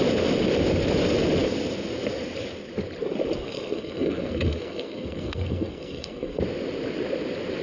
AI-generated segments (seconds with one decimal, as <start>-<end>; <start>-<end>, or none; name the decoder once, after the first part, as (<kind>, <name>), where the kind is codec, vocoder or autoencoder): 3.4-6.4 (codec, SNAC)